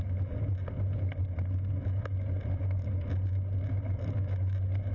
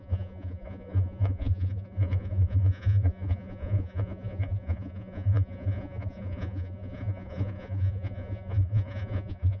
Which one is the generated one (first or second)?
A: second